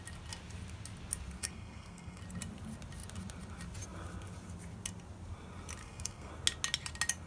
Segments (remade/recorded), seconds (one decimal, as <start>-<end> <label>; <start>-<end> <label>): 0.0-1.4 recorded; 1.4-2.2 remade; 2.2-5.8 recorded; 5.8-6.3 remade; 6.3-7.3 recorded